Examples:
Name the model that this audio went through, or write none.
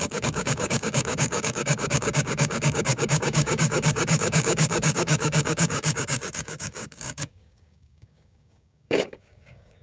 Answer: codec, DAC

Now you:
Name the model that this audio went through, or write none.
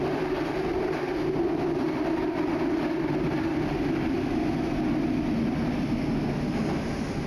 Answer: none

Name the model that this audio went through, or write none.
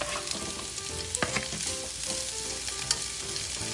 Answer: none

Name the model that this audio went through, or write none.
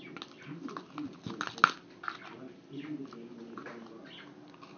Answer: none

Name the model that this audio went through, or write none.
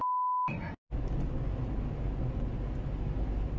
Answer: none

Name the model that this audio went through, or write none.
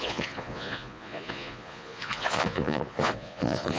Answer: vocoder, Vocos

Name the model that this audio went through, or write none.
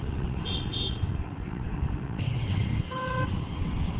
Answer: vocoder, WaveNeXt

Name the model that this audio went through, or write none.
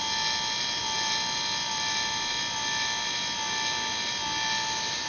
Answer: none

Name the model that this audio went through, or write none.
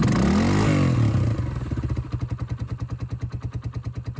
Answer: none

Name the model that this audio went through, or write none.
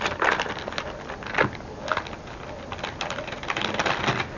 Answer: none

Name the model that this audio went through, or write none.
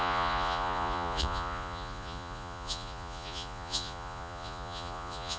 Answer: vocoder, Vocos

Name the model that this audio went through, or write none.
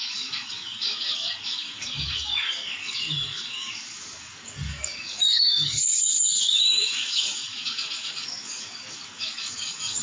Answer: codec, DAC